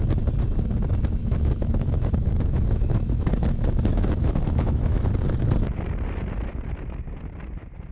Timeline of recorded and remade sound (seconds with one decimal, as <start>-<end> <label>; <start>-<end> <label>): 0.0-1.2 recorded; 1.2-3.3 remade; 3.3-3.9 recorded; 3.9-5.1 remade; 5.1-7.9 recorded